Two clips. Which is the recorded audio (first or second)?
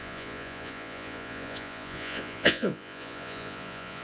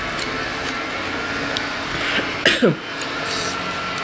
second